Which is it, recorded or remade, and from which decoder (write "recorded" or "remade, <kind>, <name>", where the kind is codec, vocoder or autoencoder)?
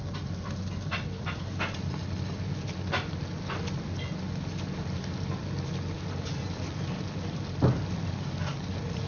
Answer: recorded